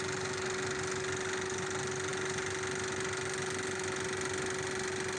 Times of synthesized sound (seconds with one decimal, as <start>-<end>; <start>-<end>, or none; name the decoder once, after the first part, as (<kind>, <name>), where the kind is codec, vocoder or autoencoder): none